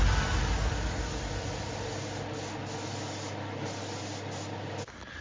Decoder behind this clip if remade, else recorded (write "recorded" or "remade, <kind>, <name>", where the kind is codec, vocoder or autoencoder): recorded